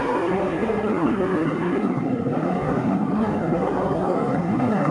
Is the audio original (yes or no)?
no